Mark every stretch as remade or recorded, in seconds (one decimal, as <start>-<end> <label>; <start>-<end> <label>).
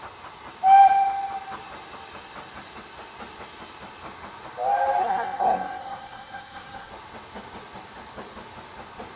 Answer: 0.0-5.0 recorded; 5.0-6.9 remade; 6.9-9.2 recorded